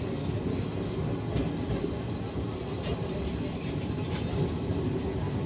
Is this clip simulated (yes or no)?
no